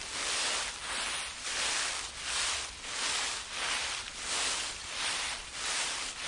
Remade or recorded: remade